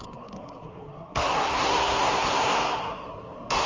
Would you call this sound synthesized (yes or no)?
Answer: yes